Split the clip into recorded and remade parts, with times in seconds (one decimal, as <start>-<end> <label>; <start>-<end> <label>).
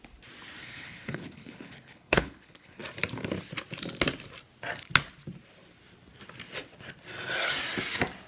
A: 0.0-0.6 recorded; 0.6-2.8 remade; 2.8-8.3 recorded